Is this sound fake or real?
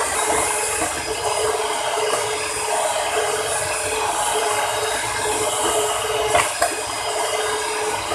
real